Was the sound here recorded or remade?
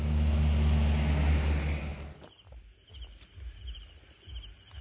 recorded